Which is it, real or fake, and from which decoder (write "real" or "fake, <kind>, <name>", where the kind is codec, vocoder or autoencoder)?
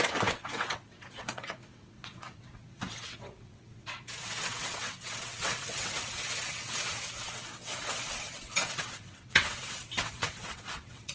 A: fake, vocoder, WaveNeXt